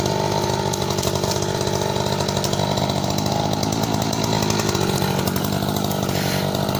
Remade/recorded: recorded